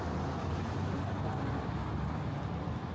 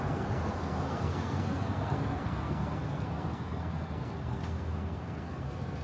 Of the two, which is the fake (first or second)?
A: second